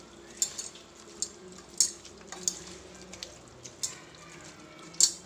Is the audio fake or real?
real